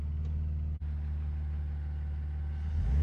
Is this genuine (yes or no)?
yes